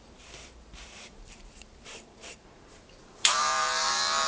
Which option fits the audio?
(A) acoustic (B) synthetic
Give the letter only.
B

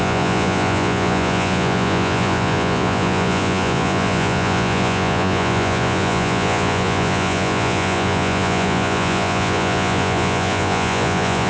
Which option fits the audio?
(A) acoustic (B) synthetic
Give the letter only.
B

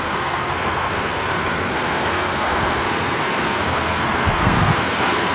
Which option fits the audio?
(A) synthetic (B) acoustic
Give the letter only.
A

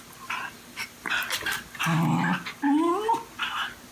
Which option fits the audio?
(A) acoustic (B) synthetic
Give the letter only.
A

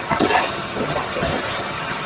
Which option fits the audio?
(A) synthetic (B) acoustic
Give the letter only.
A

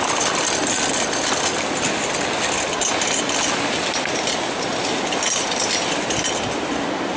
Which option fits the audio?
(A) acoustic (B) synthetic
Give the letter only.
A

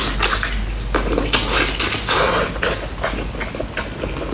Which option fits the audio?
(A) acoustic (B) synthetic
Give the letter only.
A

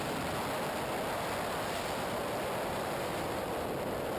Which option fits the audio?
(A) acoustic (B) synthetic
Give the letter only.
A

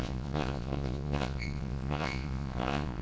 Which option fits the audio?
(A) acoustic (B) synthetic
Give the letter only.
B